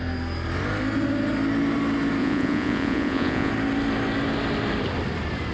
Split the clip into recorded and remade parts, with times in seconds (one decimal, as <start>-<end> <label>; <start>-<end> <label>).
0.0-2.2 recorded; 2.2-3.5 remade; 3.5-5.5 recorded

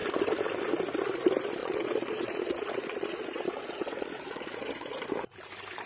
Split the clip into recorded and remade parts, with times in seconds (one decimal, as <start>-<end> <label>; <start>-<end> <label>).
0.0-1.6 recorded; 1.6-5.0 remade; 5.0-5.9 recorded

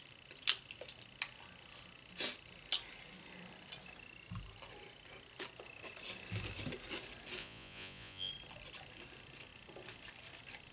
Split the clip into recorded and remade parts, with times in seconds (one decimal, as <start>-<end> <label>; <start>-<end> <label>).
0.0-7.4 recorded; 7.4-8.3 remade; 8.3-10.7 recorded

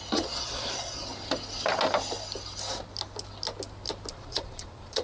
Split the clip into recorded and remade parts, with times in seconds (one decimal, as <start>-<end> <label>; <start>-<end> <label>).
0.0-1.1 remade; 1.1-4.1 recorded; 4.1-5.0 remade

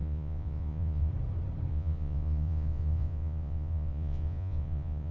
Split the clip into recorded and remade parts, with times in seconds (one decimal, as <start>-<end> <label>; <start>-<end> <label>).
0.0-1.1 remade; 1.1-1.7 recorded; 1.7-5.1 remade

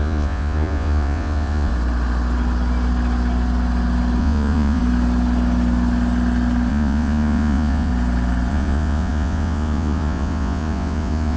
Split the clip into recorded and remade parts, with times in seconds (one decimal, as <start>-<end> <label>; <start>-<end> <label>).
0.0-1.7 remade; 1.7-4.2 recorded; 4.2-4.8 remade; 4.8-6.7 recorded; 6.7-7.9 remade; 7.9-8.5 recorded; 8.5-11.4 remade

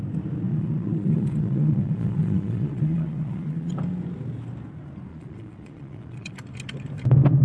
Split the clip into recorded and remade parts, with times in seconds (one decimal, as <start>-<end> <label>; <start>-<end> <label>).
0.0-0.5 recorded; 0.5-3.7 remade; 3.7-5.1 recorded; 5.1-6.3 remade; 6.3-7.4 recorded

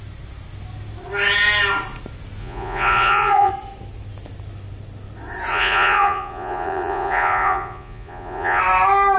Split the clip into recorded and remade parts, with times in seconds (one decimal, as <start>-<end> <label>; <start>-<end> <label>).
0.0-2.4 recorded; 2.4-3.5 remade; 3.5-5.5 recorded; 5.5-8.6 remade; 8.6-9.2 recorded